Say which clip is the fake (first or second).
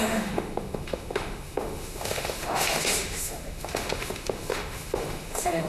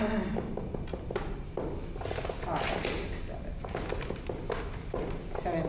first